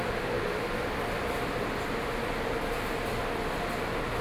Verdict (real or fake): real